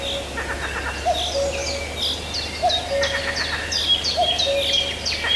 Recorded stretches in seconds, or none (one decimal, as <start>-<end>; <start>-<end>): 0.0-5.4